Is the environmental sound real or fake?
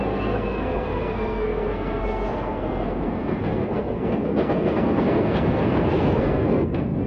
fake